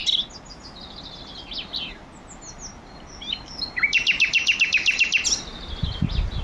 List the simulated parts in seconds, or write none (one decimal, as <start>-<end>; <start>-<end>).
none